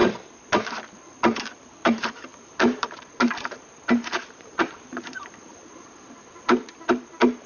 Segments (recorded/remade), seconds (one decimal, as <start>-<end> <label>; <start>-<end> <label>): 0.0-1.6 recorded; 1.6-7.5 remade